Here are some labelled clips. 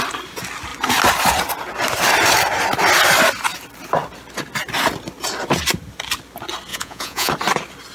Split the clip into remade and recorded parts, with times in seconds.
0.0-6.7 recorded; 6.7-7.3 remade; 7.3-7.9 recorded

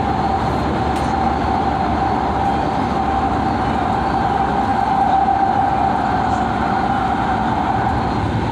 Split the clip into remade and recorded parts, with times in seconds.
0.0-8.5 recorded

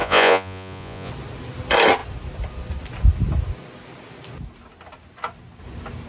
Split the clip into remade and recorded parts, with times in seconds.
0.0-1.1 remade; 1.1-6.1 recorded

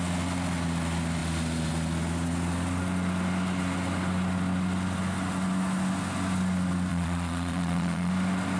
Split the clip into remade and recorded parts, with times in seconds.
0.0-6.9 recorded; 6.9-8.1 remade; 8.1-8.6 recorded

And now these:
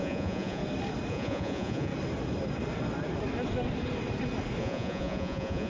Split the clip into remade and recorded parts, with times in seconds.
0.0-0.6 remade; 0.6-1.1 recorded; 1.1-1.9 remade; 1.9-4.6 recorded; 4.6-5.7 remade